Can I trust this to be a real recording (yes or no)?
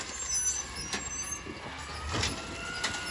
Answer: yes